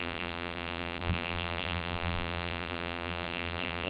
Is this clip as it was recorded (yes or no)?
no